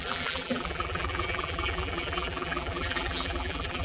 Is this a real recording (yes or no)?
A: no